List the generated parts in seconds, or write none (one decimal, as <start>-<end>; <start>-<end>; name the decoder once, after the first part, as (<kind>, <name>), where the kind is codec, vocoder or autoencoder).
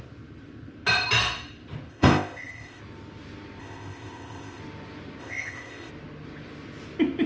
1.9-2.8 (codec, ZipCodec); 3.6-4.6; 5.2-5.9